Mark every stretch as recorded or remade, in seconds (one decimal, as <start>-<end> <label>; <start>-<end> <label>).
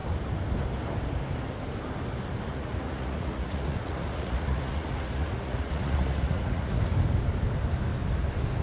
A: 0.0-2.5 recorded; 2.5-6.8 remade; 6.8-8.6 recorded